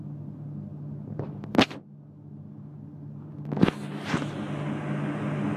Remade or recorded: recorded